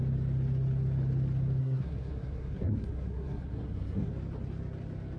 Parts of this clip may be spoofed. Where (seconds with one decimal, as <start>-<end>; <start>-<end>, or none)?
1.6-4.1